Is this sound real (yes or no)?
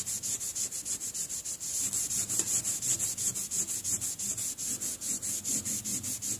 yes